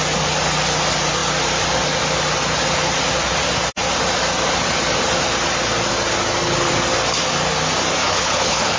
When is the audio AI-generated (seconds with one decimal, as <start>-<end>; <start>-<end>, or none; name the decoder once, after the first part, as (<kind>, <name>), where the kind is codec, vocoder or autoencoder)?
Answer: 8.0-8.8 (codec, HILCodec)